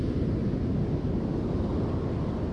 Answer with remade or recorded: recorded